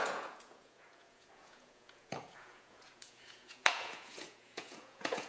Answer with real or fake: fake